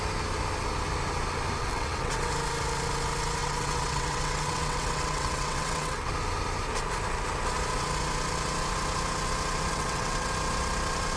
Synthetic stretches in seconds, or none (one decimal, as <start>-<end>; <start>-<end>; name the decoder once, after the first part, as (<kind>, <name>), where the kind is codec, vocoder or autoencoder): 1.6-2.3 (vocoder, WaveNeXt); 3.4-6.1; 9.7-10.3